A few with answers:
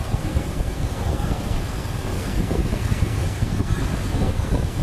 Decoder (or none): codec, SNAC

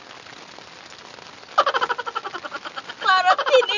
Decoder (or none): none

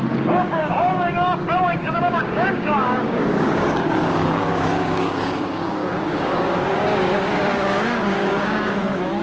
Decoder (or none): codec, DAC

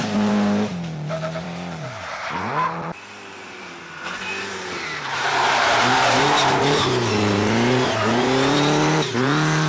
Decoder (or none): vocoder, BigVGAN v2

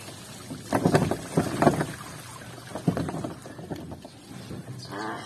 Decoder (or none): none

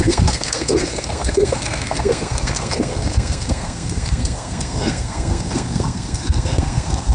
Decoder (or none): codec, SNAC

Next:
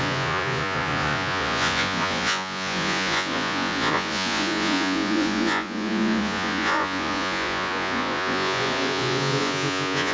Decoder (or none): vocoder, Vocos